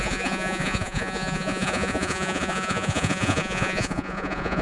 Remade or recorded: remade